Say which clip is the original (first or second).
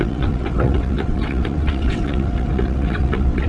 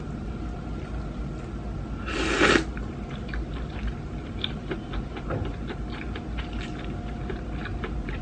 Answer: second